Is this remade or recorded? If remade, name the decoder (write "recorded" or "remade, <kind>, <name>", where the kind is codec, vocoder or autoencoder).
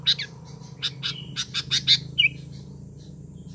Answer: recorded